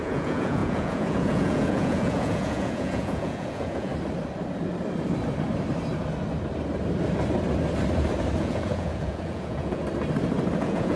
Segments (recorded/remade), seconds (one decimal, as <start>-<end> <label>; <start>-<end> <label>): 0.0-3.9 remade; 3.9-8.4 recorded; 8.4-9.8 remade; 9.8-10.6 recorded; 10.6-11.0 remade